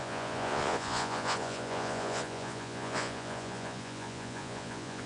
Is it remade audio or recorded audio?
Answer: remade